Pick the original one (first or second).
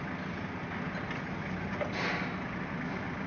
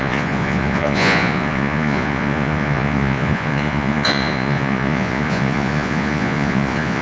first